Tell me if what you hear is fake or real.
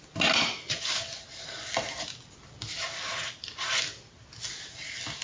real